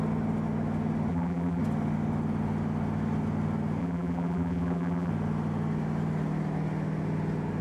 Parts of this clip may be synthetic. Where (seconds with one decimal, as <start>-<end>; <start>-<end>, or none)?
1.1-1.6; 3.8-5.1